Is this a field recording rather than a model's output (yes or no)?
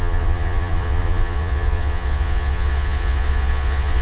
no